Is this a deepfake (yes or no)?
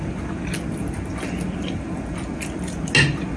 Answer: no